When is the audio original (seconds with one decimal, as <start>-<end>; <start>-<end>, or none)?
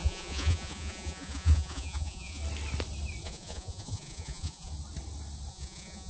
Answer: 2.4-3.2; 4.7-5.5